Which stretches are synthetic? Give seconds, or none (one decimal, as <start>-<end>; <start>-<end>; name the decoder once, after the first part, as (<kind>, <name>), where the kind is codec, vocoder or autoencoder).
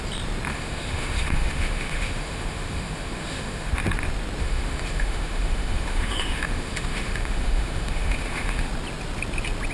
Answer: 0.5-3.7 (autoencoder, DAC-VAE); 4.4-8.7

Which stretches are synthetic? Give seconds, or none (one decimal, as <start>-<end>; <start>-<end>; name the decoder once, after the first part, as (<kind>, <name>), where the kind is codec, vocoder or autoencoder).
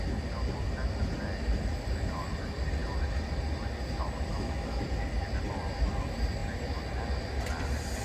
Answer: 4.3-4.8 (autoencoder, DAC-VAE)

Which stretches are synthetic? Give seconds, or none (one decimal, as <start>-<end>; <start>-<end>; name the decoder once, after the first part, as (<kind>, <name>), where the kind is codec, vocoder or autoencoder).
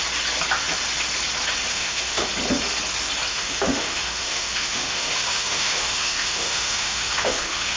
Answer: 1.7-2.3 (autoencoder, DAC-VAE); 3.3-7.8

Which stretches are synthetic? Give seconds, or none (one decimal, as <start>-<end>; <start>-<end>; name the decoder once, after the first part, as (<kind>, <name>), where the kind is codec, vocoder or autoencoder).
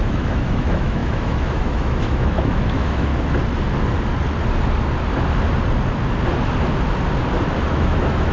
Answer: 0.0-3.1 (autoencoder, DAC-VAE); 7.7-8.3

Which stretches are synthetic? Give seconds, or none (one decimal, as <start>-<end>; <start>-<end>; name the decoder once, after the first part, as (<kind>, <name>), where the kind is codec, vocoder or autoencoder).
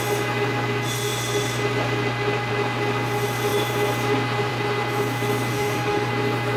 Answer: 5.5-6.1 (autoencoder, DAC-VAE)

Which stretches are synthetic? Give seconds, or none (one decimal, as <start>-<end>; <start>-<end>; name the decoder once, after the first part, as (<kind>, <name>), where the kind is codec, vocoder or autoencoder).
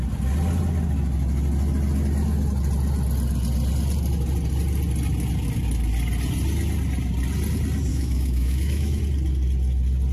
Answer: 7.9-9.0 (autoencoder, DAC-VAE)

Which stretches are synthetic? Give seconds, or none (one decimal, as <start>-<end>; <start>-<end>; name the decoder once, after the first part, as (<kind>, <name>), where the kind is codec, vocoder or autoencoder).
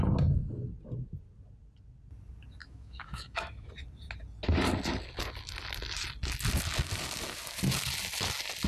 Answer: 2.6-3.7 (autoencoder, DAC-VAE)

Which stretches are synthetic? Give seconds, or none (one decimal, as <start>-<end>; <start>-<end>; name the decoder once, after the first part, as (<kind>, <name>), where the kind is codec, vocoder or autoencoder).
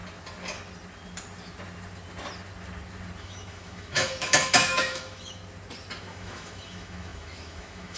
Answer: 3.2-5.4 (autoencoder, DAC-VAE); 6.0-8.0